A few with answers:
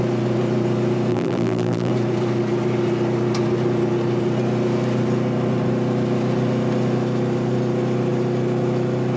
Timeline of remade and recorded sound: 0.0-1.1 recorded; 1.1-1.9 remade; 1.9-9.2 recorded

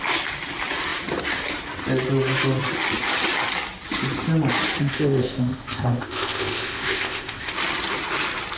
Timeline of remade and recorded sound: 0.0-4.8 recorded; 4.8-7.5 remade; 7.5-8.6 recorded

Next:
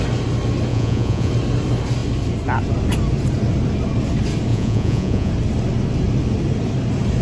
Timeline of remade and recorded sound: 0.0-0.7 recorded; 0.7-1.3 remade; 1.3-4.5 recorded; 4.5-5.3 remade; 5.3-7.2 recorded

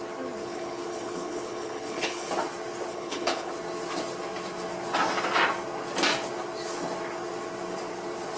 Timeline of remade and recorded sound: 0.0-0.4 recorded; 0.4-2.3 remade; 2.3-2.9 recorded; 2.9-3.5 remade; 3.5-8.4 recorded

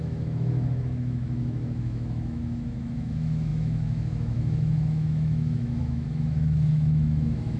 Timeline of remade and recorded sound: 0.0-7.6 remade

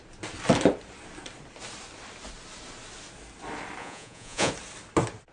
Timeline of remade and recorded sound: 0.0-3.8 recorded; 3.8-4.5 remade; 4.5-5.3 recorded

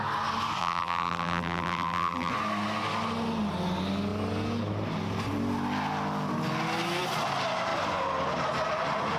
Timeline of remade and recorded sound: 0.0-0.6 recorded; 0.6-2.3 remade; 2.3-9.2 recorded